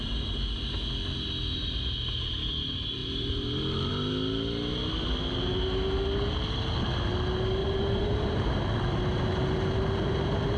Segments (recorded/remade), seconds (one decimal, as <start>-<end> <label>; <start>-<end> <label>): 0.0-3.0 recorded; 3.0-3.9 remade; 3.9-7.6 recorded; 7.6-8.6 remade; 8.6-10.6 recorded